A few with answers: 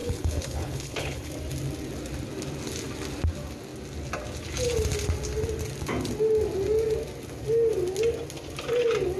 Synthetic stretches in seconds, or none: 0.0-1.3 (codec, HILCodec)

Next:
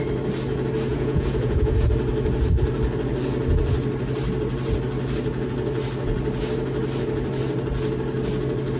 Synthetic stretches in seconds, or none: 0.9-1.9 (vocoder, Vocos)

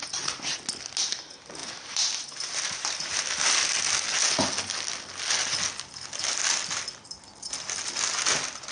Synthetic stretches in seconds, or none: 1.6-3.8 (vocoder, BigVGAN v2)

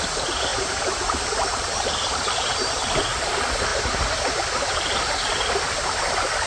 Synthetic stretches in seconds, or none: 0.5-3.3 (vocoder, BigVGAN v2); 3.7-5.6

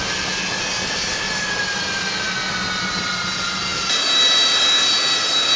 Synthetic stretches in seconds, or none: none

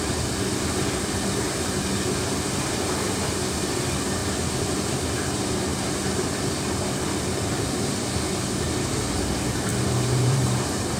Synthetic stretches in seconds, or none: 4.2-4.9 (vocoder, BigVGAN v2); 9.7-11.0

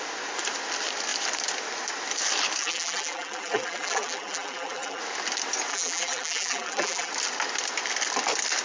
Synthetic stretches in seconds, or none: 2.6-5.0 (vocoder, BigVGAN v2); 5.7-7.1